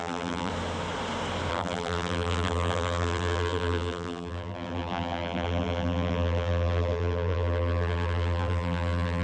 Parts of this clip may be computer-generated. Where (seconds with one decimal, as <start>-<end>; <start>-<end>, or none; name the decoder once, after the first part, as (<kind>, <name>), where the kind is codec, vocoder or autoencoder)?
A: 0.0-0.5 (vocoder, BigVGAN v2); 1.5-9.2

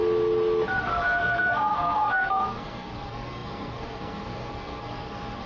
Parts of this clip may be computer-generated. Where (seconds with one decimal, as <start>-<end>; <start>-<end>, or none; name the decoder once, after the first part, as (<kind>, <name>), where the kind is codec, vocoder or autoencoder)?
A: 0.8-5.5 (codec, SNAC)

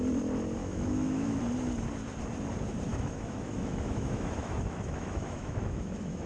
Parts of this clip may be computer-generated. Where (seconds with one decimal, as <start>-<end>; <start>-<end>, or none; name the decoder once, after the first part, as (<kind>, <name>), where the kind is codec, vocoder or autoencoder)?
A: 0.6-1.4 (autoencoder, DAC-VAE); 2.9-6.3

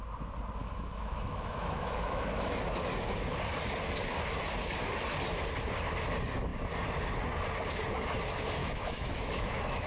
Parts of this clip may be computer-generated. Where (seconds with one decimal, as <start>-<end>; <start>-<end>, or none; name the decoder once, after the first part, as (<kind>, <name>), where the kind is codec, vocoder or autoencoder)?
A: 0.6-2.9 (autoencoder, DAC-VAE); 8.6-9.9

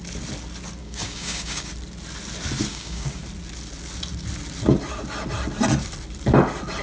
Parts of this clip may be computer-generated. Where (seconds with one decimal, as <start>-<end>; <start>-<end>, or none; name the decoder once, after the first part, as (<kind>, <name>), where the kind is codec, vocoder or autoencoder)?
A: 0.8-1.7 (codec, DAC); 2.7-3.2

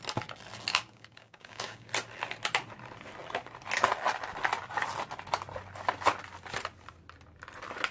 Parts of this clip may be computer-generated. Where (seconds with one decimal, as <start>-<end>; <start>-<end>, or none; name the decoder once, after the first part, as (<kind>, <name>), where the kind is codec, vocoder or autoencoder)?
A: 0.7-1.9 (codec, DAC)

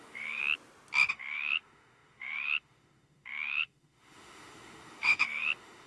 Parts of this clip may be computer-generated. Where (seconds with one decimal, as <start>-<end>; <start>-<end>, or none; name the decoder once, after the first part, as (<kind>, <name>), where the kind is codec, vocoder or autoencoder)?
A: 0.0-0.4 (autoencoder, DAC-VAE); 1.1-5.9